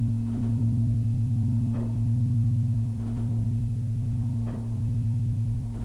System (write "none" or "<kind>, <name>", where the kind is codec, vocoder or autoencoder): vocoder, BigVGAN v2